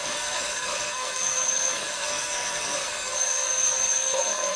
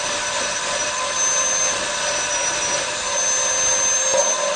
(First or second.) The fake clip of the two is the first